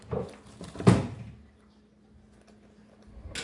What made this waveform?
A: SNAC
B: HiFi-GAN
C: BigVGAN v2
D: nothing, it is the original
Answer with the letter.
D